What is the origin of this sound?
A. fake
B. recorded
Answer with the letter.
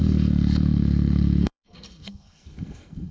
A